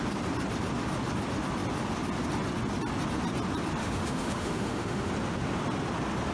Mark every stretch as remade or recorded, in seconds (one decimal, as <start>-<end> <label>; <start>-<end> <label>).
0.0-3.8 recorded; 3.8-5.1 remade; 5.1-6.3 recorded